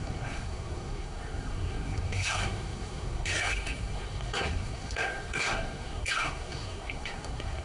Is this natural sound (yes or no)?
no